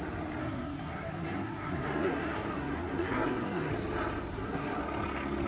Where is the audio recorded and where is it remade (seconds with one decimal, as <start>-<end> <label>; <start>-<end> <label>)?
0.0-0.4 recorded; 0.4-3.7 remade; 3.7-4.3 recorded; 4.3-4.8 remade; 4.8-5.5 recorded